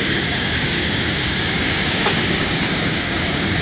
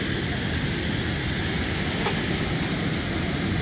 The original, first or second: second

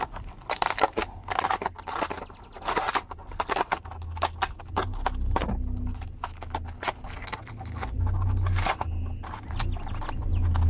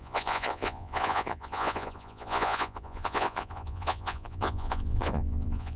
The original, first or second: first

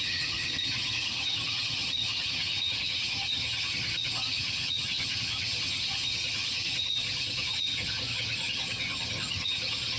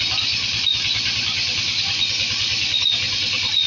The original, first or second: second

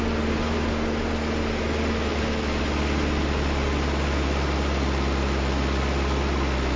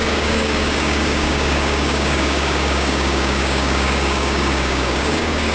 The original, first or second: first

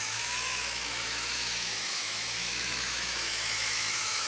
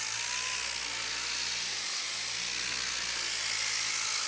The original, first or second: second